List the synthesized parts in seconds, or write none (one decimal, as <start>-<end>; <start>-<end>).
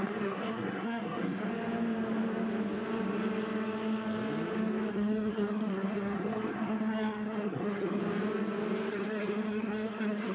0.0-1.5; 4.9-8.0; 8.9-10.3